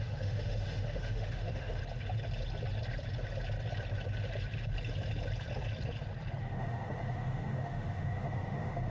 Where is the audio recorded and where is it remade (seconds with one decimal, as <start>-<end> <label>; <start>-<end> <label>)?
0.0-1.8 remade; 1.8-6.4 recorded; 6.4-8.9 remade